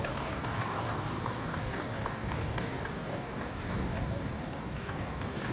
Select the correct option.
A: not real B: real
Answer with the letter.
A